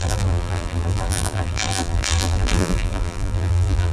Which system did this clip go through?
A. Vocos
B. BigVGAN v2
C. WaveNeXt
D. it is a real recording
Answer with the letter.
B